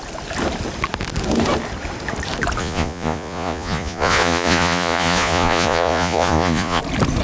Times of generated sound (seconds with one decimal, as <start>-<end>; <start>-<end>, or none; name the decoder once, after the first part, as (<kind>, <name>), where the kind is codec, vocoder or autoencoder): 2.6-6.8 (vocoder, Vocos)